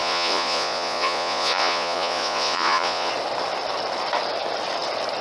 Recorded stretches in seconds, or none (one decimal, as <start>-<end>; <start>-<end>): 3.1-5.2